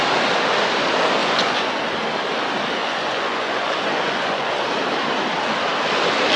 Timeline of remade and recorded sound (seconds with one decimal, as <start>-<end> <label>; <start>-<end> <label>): 0.0-1.2 recorded; 1.2-1.8 remade; 1.8-2.8 recorded; 2.8-4.5 remade; 4.5-6.4 recorded